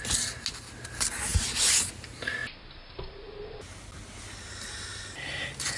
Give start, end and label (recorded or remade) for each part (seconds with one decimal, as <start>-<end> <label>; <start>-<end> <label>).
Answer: 0.0-1.3 recorded; 1.3-1.9 remade; 1.9-5.8 recorded